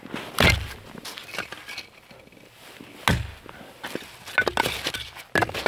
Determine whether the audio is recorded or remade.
recorded